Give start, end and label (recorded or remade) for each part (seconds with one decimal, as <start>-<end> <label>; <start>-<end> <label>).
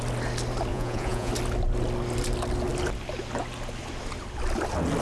0.0-0.7 recorded; 0.7-1.3 remade; 1.3-5.0 recorded